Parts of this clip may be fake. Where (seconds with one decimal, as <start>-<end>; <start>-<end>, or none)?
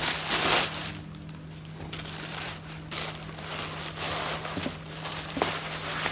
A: none